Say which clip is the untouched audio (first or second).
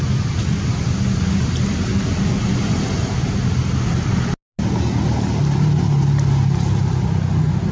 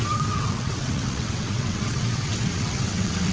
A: first